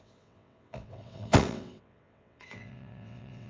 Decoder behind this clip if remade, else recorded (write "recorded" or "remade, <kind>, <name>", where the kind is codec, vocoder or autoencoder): remade, vocoder, WaveNeXt